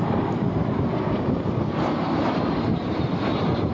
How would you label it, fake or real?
real